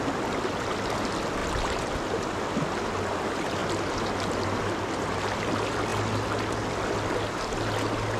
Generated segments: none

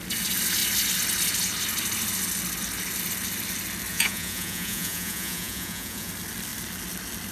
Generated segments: 3.9-6.1 (vocoder, Vocos)

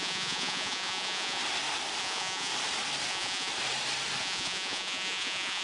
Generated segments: 0.0-1.4 (vocoder, Vocos); 2.0-2.5; 3.1-3.5; 4.2-5.6

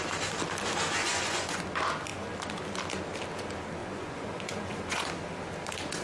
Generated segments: 1.0-1.6 (vocoder, Vocos); 3.8-5.1